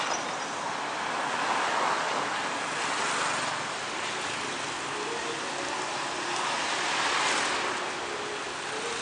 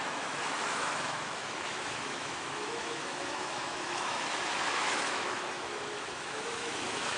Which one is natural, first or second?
first